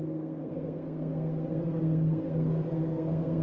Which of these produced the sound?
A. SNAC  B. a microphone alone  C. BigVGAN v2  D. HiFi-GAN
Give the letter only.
A